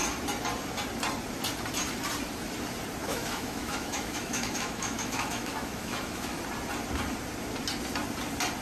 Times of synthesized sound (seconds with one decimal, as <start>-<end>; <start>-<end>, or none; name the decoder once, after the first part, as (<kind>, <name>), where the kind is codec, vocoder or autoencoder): 3.0-6.4 (autoencoder, DAC-VAE)